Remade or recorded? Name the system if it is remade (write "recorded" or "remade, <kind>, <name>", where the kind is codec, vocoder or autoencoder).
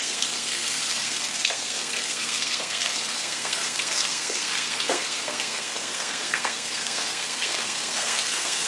remade, codec, SNAC